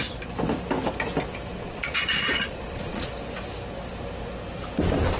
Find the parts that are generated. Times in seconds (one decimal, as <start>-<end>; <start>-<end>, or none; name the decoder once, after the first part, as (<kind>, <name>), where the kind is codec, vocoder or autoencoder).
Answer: 1.6-3.2 (vocoder, Vocos)